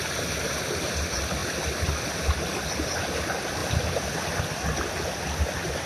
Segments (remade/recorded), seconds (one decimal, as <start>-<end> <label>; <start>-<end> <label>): 0.0-5.9 recorded